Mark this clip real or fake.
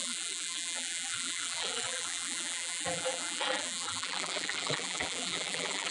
fake